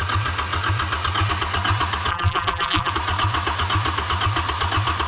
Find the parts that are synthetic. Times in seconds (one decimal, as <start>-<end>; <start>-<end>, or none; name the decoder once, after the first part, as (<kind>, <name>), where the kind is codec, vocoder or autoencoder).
2.1-2.9 (vocoder, BigVGAN v2)